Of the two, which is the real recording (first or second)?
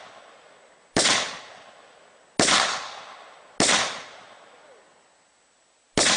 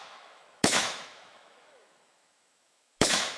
first